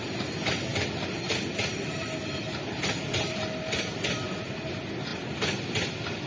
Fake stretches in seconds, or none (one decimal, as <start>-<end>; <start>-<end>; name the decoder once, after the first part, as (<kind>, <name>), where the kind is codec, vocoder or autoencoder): none